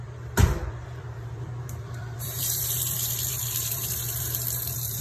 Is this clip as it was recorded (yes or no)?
no